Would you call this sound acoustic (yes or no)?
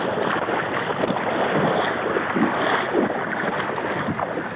yes